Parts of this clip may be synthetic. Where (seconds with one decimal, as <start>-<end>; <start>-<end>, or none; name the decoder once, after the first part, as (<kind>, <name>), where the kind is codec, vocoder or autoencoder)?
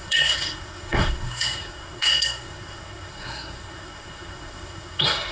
0.0-5.3 (codec, SNAC)